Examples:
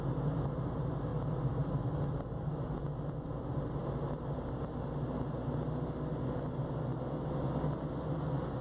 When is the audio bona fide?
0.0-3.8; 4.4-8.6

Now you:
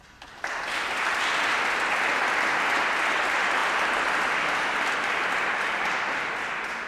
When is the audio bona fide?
0.0-6.9

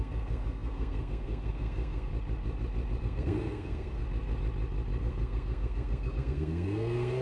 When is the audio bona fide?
2.1-3.0; 4.0-5.0

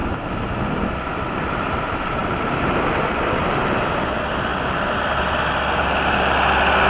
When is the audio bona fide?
0.0-6.9

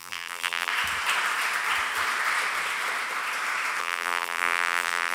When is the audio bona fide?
0.7-3.8

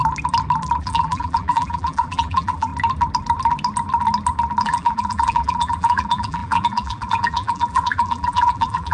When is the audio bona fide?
0.0-0.8; 2.7-4.6

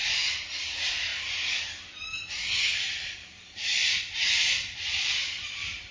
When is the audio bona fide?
1.1-2.3